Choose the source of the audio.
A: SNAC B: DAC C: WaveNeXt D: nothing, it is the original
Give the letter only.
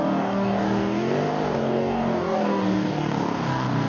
B